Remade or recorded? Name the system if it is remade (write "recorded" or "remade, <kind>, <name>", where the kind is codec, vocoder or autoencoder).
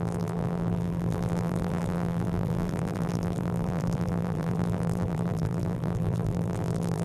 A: remade, vocoder, BigVGAN v2